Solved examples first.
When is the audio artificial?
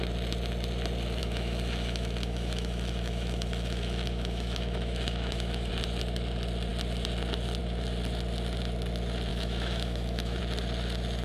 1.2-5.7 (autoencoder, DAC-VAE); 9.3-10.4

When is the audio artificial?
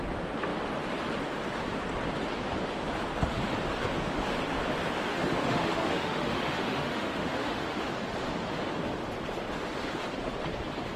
5.1-7.9 (autoencoder, DAC-VAE)